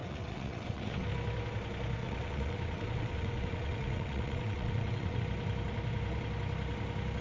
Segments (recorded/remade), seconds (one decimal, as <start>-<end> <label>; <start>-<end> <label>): 0.0-1.1 remade; 1.1-2.0 recorded; 2.0-5.2 remade; 5.2-7.2 recorded